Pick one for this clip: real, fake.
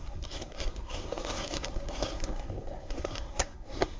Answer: fake